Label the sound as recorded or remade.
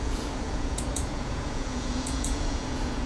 remade